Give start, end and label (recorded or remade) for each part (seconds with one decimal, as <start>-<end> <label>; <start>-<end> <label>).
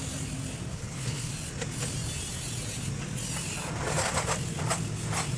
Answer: 0.0-0.7 recorded; 0.7-1.3 remade; 1.3-5.4 recorded